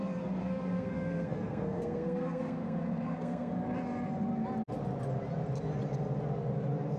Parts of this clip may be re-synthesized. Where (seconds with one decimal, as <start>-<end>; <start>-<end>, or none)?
0.4-3.5